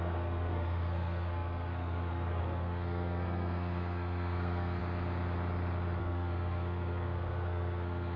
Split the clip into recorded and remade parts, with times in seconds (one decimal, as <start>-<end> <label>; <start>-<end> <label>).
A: 0.0-4.8 remade; 4.8-6.0 recorded; 6.0-8.2 remade